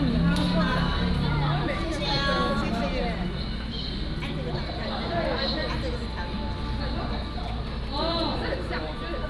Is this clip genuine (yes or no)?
yes